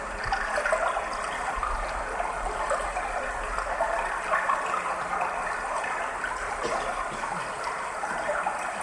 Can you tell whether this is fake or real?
real